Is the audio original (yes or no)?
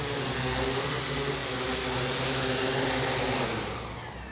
yes